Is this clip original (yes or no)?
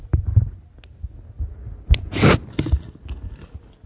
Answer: yes